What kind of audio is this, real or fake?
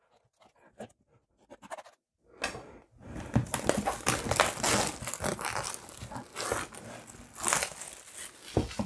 real